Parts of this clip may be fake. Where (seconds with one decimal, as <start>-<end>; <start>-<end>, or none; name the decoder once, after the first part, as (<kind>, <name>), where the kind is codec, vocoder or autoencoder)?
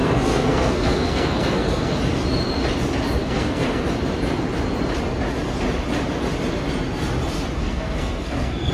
0.0-2.0 (codec, SNAC); 3.2-3.8; 7.6-8.7